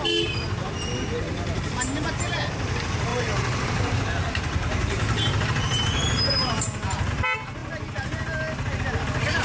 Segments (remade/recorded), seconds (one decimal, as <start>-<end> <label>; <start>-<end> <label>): 0.0-3.1 recorded; 3.1-7.1 remade; 7.1-9.4 recorded